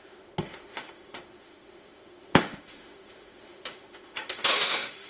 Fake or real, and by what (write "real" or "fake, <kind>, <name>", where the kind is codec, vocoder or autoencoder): fake, autoencoder, DAC-VAE